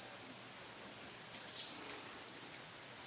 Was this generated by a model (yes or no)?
no